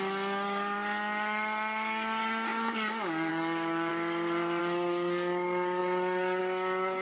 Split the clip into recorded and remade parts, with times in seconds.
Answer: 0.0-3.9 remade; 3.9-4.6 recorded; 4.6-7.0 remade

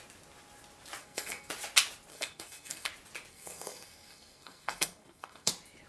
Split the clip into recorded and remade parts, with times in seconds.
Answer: 0.0-1.0 recorded; 1.0-1.5 remade; 1.5-2.1 recorded; 2.1-2.9 remade; 2.9-3.3 recorded; 3.3-5.5 remade; 5.5-5.9 recorded

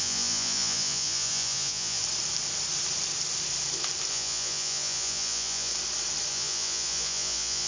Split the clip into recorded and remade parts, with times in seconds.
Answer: 0.0-2.0 remade; 2.0-4.1 recorded; 4.1-5.7 remade; 5.7-6.3 recorded; 6.3-7.7 remade

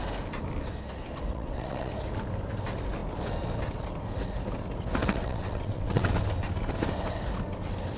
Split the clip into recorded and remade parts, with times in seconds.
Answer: 0.0-1.3 recorded; 1.3-1.9 remade; 1.9-5.0 recorded; 5.0-6.1 remade; 6.1-8.0 recorded

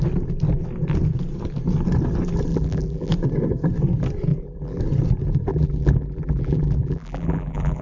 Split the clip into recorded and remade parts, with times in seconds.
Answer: 0.0-2.5 recorded; 2.5-3.1 remade; 3.1-4.3 recorded; 4.3-4.8 remade; 4.8-5.5 recorded; 5.5-7.8 remade